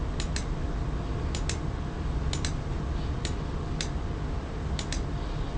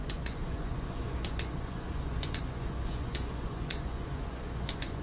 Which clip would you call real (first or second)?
first